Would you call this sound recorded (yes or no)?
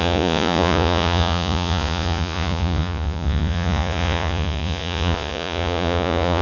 no